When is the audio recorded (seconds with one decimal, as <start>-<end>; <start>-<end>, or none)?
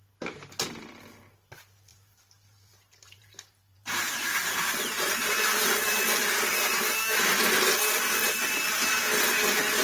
0.0-1.9; 6.9-9.8